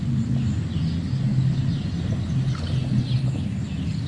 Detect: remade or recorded recorded